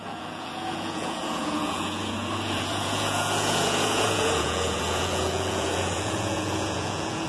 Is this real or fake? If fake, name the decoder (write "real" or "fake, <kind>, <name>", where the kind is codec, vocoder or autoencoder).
fake, vocoder, Vocos